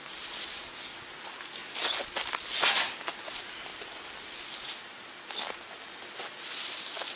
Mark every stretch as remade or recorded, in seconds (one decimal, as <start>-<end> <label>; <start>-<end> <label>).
0.0-7.1 recorded